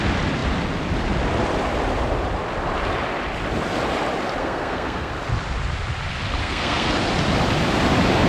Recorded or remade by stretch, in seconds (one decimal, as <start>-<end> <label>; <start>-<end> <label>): 0.0-4.4 recorded; 4.4-5.1 remade; 5.1-6.4 recorded; 6.4-6.9 remade; 6.9-8.3 recorded